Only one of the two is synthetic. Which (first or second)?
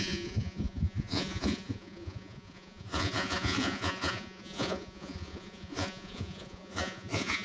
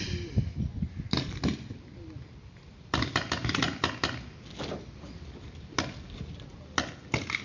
first